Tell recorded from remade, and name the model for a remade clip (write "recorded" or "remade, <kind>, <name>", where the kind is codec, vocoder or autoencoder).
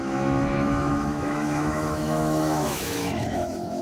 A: remade, autoencoder, DAC-VAE